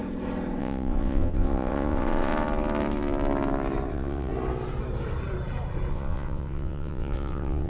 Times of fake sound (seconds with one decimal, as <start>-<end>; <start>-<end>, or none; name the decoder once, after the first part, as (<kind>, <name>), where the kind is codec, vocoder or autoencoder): 0.6-2.3 (vocoder, WaveNeXt); 3.9-4.3; 5.9-7.7